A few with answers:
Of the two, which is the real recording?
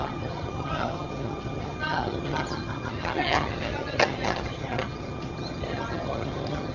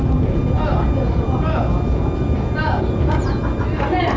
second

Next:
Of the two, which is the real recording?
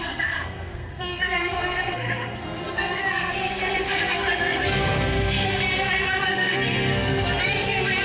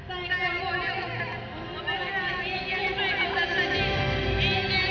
second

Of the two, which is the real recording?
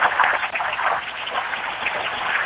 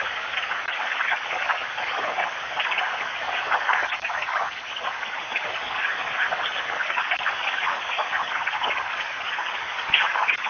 first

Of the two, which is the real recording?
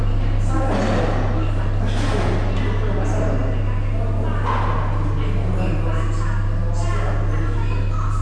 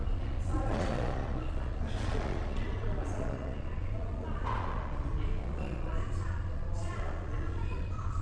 first